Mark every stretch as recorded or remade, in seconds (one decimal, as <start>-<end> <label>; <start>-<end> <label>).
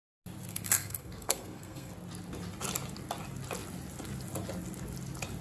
0.0-0.5 recorded; 0.5-1.9 remade; 1.9-5.4 recorded